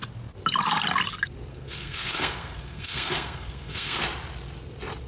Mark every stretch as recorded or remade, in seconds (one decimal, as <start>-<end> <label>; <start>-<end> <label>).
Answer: 0.0-1.5 recorded; 1.5-4.0 remade; 4.0-5.1 recorded